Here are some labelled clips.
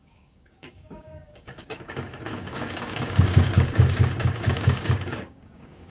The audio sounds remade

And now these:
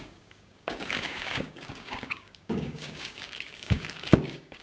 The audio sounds remade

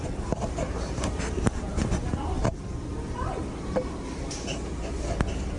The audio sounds recorded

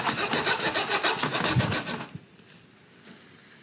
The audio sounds recorded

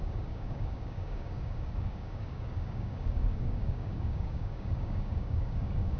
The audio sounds remade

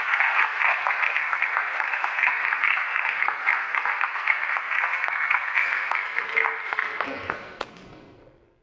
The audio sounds remade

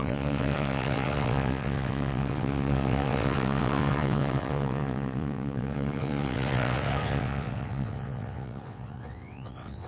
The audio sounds remade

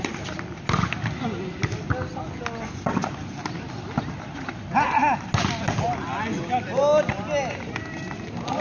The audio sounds recorded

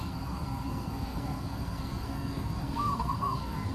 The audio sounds remade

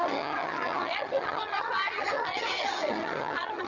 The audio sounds remade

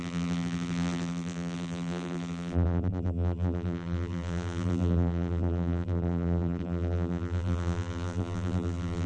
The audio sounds remade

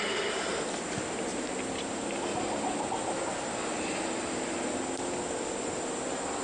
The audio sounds recorded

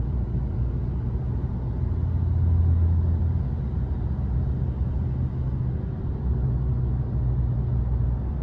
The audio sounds recorded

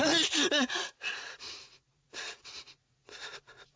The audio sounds remade